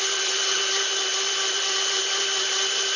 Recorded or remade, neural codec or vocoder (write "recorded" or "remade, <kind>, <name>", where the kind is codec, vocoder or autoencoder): remade, vocoder, BigVGAN v2